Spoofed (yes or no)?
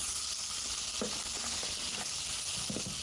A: no